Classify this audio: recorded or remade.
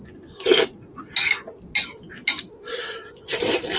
recorded